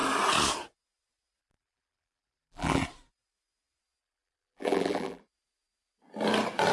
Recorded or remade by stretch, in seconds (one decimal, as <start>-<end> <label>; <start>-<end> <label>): 0.0-1.4 recorded; 1.4-2.8 remade; 2.8-4.0 recorded; 4.0-5.2 remade; 5.2-6.7 recorded